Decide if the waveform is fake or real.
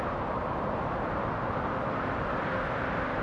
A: real